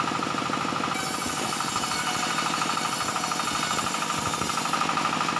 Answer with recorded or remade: recorded